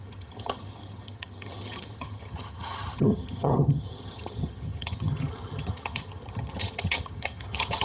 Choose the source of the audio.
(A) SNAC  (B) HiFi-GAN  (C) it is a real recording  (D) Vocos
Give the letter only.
B